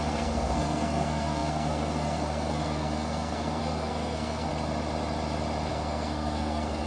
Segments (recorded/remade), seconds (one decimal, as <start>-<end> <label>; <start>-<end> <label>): 0.0-4.5 remade; 4.5-5.7 recorded; 5.7-6.9 remade